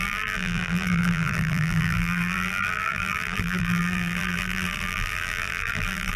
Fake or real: fake